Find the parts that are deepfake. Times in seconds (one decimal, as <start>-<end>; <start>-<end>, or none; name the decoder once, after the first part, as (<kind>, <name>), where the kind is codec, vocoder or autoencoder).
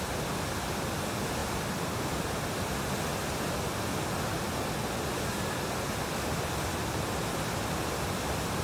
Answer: 1.4-2.9 (vocoder, BigVGAN v2)